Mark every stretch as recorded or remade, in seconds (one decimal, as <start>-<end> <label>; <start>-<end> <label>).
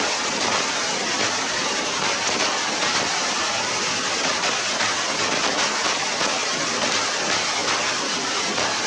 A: 0.0-2.8 recorded; 2.8-4.3 remade; 4.3-7.6 recorded; 7.6-8.9 remade